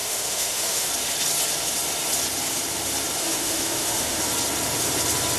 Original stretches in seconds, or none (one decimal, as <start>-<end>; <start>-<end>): 0.9-3.2; 4.2-5.4